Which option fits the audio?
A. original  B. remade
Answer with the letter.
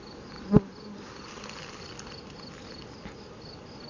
A